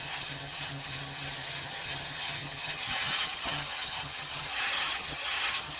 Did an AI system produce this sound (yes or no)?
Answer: yes